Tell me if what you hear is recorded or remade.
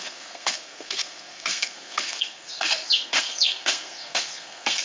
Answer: remade